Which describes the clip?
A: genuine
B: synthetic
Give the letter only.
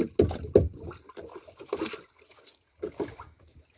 A